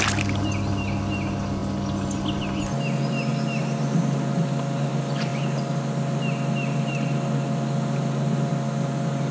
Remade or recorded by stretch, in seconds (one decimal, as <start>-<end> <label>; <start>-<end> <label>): 0.0-9.3 recorded